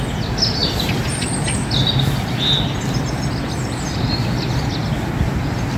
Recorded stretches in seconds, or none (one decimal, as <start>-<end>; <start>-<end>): 0.0-5.8